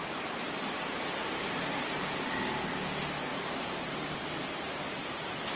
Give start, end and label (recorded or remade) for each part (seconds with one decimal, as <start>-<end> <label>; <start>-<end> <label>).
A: 0.0-5.6 remade